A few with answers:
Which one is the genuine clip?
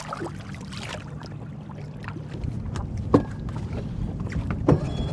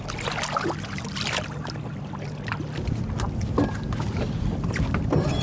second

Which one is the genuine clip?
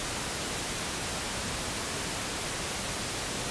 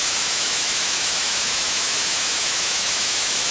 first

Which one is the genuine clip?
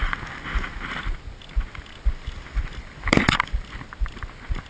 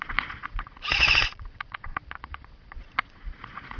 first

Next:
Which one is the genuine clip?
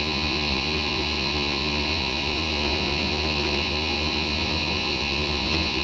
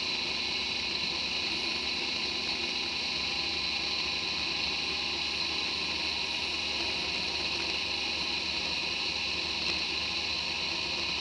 second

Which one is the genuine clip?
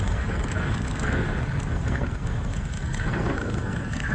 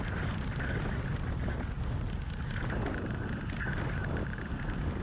second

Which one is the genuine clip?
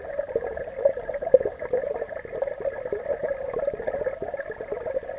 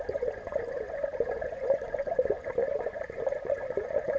first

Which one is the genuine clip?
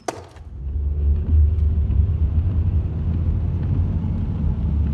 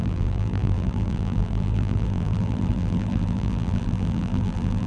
first